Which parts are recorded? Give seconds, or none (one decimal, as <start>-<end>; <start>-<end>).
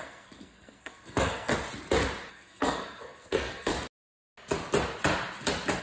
1.5-2.3; 3.7-5.8